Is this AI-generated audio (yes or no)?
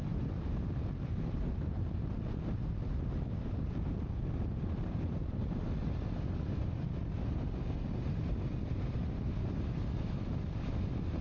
no